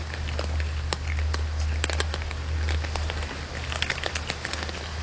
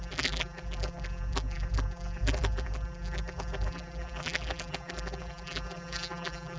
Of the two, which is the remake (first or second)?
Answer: second